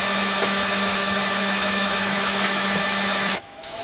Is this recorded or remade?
remade